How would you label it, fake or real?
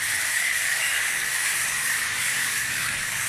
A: fake